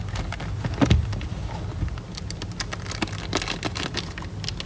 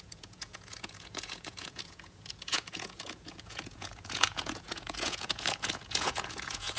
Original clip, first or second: first